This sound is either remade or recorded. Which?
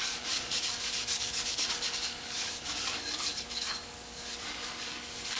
remade